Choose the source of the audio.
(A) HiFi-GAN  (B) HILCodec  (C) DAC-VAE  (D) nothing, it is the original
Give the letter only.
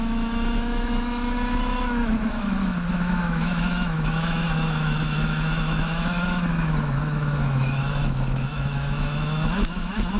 C